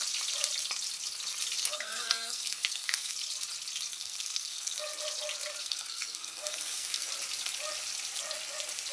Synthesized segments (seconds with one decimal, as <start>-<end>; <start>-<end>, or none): 1.6-3.2; 3.9-4.8; 5.6-7.1